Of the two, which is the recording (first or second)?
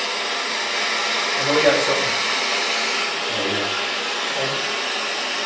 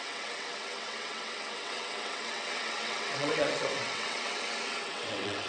first